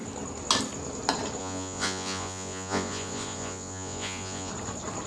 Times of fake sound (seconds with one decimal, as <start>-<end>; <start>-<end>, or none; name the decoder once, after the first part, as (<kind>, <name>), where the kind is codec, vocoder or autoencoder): 1.4-4.5 (vocoder, Vocos)